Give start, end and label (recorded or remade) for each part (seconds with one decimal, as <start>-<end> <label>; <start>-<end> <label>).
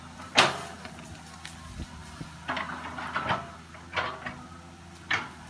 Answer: 0.0-5.5 recorded